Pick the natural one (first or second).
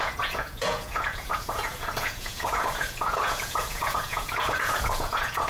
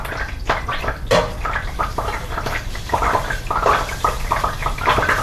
second